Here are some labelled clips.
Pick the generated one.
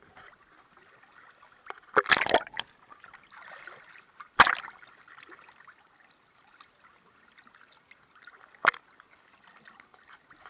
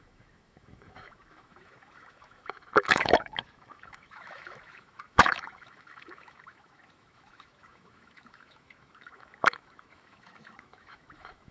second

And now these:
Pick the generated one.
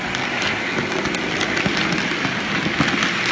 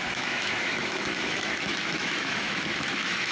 second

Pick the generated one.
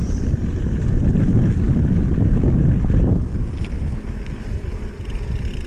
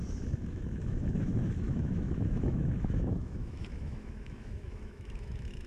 second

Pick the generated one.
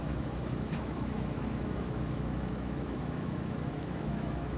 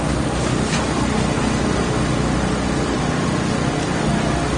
first